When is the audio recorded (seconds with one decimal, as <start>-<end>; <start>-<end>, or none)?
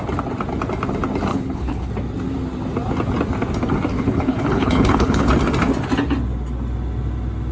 0.0-1.3; 1.9-3.9; 5.3-7.5